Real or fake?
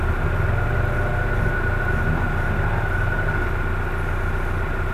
real